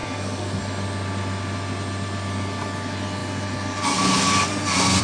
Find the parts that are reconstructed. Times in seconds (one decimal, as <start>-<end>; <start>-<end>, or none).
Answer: 0.0-0.6